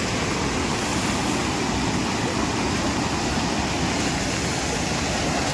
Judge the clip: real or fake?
real